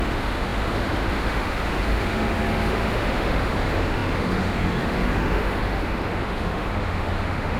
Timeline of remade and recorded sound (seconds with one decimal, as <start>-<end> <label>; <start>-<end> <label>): 0.0-7.6 remade